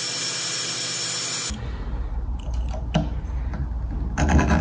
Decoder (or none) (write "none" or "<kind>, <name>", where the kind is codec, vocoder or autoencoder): none